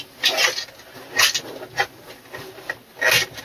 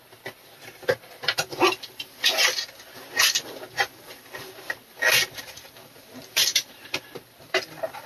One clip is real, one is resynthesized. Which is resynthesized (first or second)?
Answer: second